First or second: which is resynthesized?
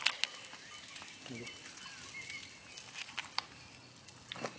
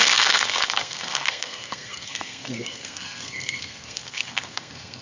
second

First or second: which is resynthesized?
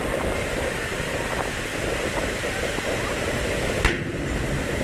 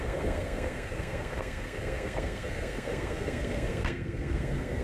second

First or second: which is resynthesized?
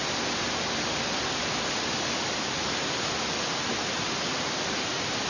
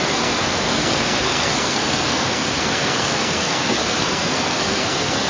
second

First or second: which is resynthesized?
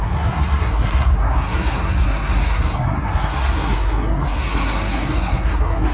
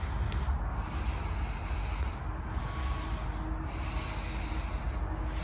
first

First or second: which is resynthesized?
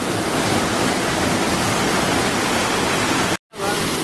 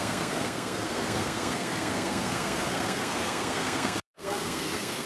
second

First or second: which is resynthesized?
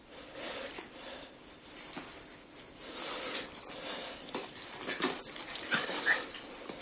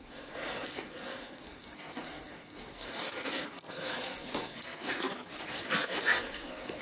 second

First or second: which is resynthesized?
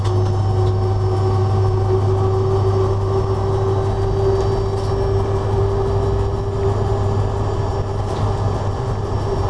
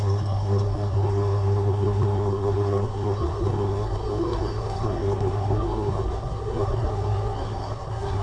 second